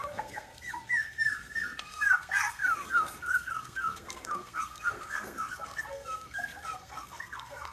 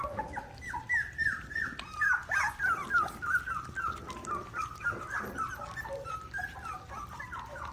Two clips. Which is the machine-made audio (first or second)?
first